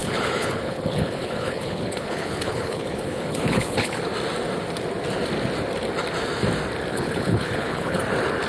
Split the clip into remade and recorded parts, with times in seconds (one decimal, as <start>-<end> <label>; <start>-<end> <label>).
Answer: 0.0-4.0 remade; 4.0-6.9 recorded; 6.9-8.0 remade; 8.0-8.5 recorded